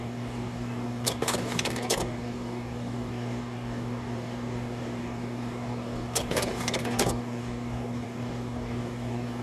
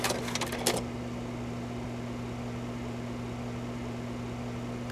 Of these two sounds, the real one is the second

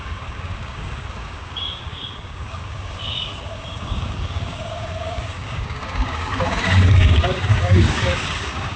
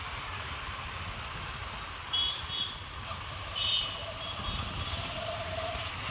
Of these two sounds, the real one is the second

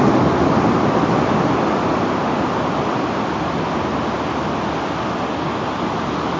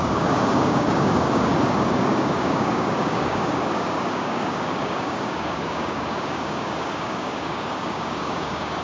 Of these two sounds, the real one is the first